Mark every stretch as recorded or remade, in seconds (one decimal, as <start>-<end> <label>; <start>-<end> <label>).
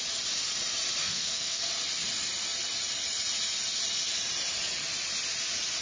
0.0-1.0 recorded; 1.0-1.6 remade; 1.6-5.8 recorded